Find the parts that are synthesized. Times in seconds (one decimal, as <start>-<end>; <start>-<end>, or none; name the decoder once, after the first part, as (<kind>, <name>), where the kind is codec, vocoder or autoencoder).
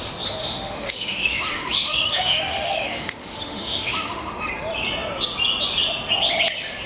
0.4-4.5 (autoencoder, DAC-VAE)